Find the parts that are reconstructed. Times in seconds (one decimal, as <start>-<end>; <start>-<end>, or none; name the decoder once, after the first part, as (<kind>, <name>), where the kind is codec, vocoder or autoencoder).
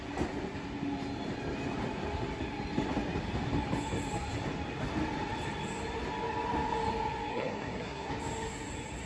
7.3-8.1 (codec, SNAC)